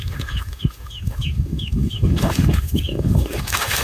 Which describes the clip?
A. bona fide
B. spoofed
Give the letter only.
B